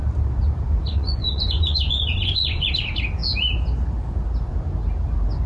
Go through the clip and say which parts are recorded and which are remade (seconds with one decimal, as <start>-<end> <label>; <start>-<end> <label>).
0.0-0.9 recorded; 0.9-2.7 remade; 2.7-5.5 recorded